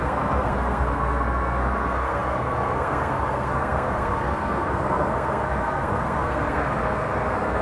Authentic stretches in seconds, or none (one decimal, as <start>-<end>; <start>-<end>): none